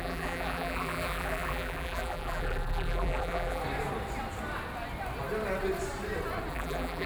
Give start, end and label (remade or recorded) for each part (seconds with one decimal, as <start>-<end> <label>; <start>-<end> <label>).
0.0-3.6 remade; 3.6-6.5 recorded; 6.5-7.1 remade